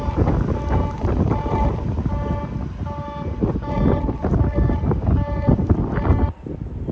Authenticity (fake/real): real